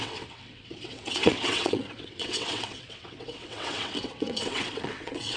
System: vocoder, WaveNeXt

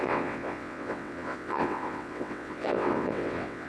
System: vocoder, WaveNeXt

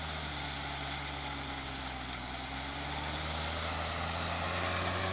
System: none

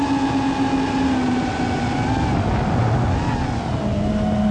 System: none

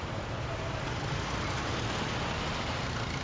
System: none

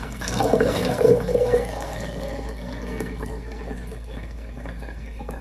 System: codec, SNAC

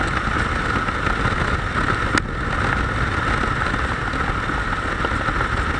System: none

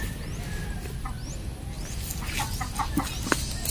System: none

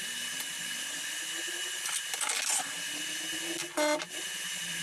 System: none